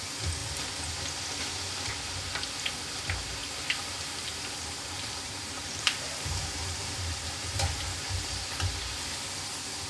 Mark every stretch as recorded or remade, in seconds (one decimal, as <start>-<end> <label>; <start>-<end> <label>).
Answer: 0.0-3.4 recorded; 3.4-8.5 remade; 8.5-9.9 recorded